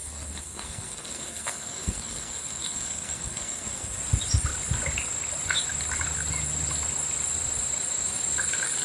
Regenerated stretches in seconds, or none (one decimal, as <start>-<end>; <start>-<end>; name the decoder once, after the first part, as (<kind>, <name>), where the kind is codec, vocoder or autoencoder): 0.0-4.0 (codec, SNAC)